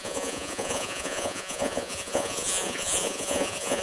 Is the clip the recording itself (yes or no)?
no